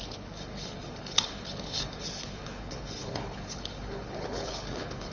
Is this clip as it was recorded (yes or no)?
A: no